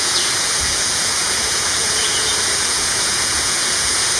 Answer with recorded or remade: remade